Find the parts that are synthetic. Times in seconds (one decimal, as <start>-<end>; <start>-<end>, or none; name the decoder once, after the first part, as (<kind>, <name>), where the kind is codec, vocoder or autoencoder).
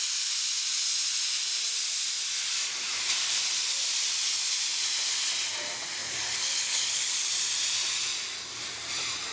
6.0-7.3 (codec, DAC)